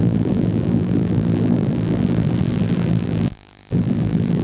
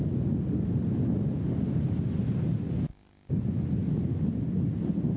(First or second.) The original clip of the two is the second